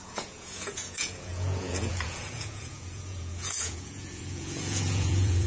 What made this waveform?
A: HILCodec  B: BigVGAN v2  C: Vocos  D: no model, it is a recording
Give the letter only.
C